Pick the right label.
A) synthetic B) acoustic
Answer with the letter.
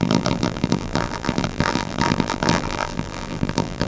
A